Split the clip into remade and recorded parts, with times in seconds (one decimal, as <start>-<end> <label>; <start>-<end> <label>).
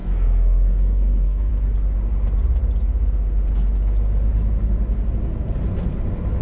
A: 0.0-1.5 remade; 1.5-6.4 recorded